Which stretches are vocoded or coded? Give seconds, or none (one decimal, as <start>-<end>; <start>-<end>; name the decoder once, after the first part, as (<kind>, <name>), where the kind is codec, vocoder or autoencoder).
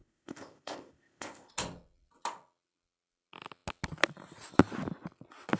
0.0-1.5 (codec, ZipCodec)